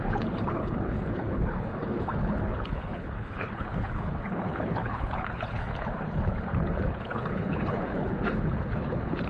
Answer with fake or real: fake